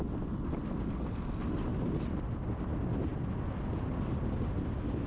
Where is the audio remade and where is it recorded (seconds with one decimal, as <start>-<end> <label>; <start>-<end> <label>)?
0.0-5.1 recorded